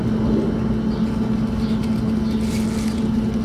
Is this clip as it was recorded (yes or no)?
yes